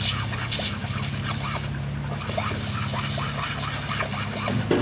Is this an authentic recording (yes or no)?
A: yes